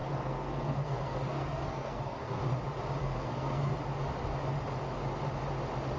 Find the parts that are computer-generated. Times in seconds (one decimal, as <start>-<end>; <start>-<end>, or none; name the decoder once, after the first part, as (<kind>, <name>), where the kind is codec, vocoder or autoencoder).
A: 0.0-2.4 (codec, SNAC); 3.0-3.7